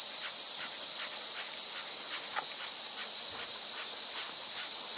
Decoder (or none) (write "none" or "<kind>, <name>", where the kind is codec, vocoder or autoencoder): none